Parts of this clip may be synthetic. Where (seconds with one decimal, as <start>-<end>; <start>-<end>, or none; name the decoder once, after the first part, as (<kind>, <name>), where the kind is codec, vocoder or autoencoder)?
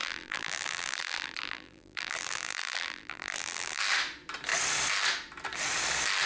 0.0-3.8 (vocoder, BigVGAN v2)